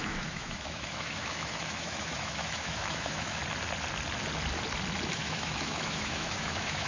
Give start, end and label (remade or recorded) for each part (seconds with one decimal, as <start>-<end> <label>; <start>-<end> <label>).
0.0-3.4 remade; 3.4-5.1 recorded; 5.1-6.9 remade